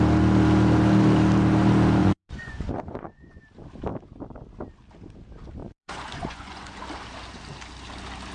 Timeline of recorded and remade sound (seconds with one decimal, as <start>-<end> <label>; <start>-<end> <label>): 0.0-2.0 recorded; 2.0-3.4 remade; 3.4-5.6 recorded; 5.6-6.8 remade; 6.8-8.3 recorded